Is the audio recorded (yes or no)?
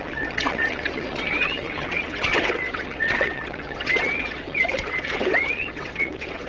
no